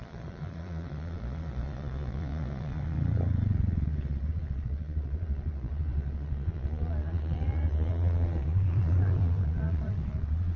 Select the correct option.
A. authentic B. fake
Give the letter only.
B